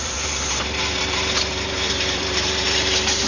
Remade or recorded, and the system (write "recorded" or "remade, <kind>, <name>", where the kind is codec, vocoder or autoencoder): remade, vocoder, BigVGAN v2